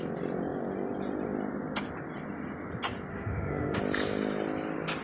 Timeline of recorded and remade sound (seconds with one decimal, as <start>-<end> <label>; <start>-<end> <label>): 0.0-3.1 recorded; 3.1-3.8 remade; 3.8-5.0 recorded